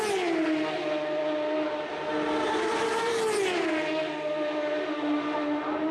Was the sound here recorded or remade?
recorded